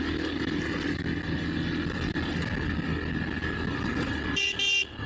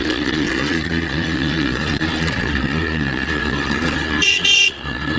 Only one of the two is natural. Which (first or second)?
first